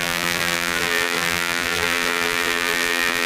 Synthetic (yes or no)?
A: yes